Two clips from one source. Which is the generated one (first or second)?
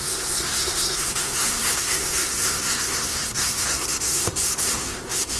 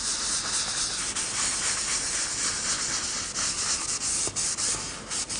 first